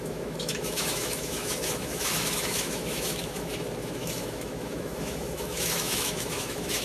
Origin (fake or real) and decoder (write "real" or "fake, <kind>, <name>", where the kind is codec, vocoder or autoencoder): fake, autoencoder, DAC-VAE